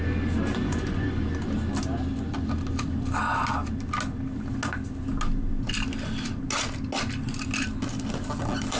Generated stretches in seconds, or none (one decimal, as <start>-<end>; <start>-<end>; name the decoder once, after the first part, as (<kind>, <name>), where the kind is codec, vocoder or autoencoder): 0.5-1.1 (vocoder, Vocos)